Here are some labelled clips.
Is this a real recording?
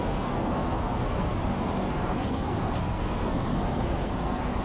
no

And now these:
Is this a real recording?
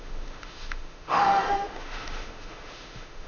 no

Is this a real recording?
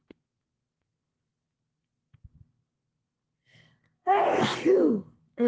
no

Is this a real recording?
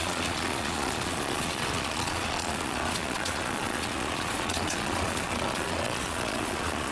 no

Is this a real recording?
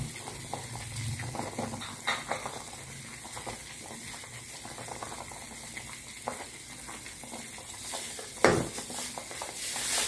yes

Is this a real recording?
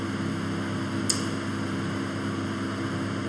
yes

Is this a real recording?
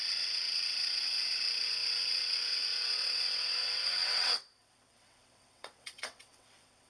no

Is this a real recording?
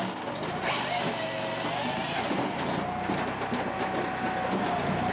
yes